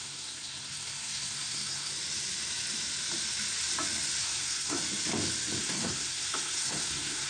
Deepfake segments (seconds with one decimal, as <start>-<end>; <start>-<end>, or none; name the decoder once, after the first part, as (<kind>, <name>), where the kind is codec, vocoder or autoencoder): 0.0-1.9 (codec, SNAC); 4.2-4.8; 5.6-7.3